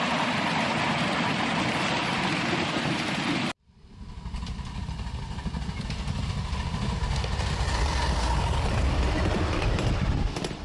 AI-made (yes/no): no